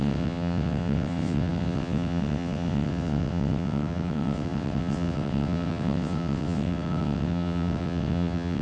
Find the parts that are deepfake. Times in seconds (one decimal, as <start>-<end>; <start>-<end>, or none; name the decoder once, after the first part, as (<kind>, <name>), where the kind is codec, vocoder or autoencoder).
0.0-8.6 (vocoder, WaveNeXt)